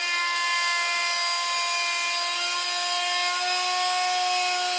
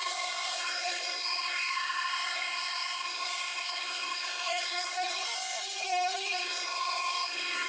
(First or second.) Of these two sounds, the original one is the first